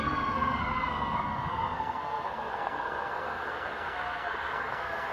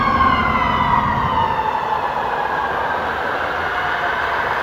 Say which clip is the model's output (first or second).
first